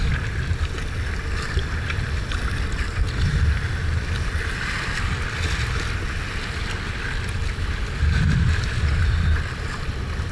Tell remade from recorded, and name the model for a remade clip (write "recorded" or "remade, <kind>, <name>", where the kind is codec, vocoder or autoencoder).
recorded